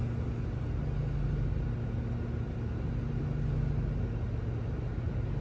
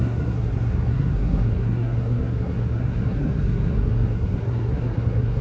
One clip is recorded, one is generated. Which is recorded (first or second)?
first